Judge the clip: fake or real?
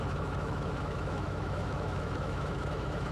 fake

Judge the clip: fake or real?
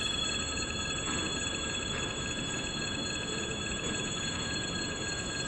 fake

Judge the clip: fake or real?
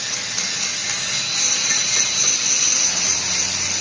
real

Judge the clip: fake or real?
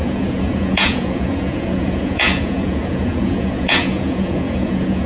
fake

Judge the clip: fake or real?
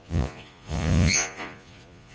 fake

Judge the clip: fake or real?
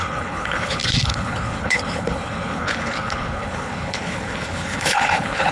fake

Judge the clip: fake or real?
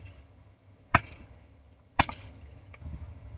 fake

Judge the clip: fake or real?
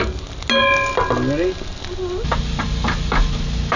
real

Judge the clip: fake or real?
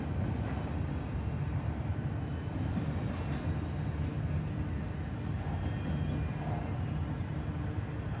real